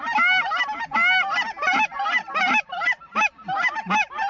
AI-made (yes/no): no